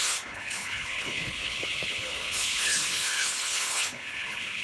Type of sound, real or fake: fake